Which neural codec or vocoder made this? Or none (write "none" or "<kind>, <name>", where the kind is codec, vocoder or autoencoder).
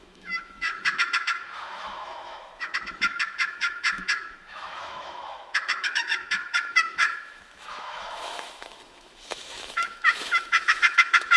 autoencoder, DAC-VAE